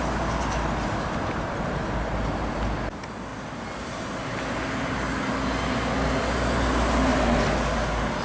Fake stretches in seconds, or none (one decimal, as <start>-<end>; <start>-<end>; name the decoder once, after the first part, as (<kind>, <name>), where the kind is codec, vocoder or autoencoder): none